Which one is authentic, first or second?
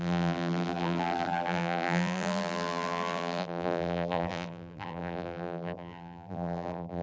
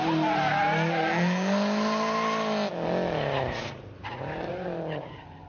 second